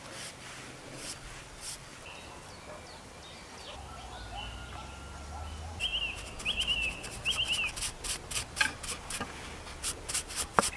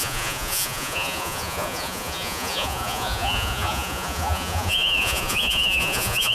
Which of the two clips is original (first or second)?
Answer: first